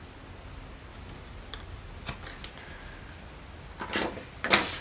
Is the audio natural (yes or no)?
yes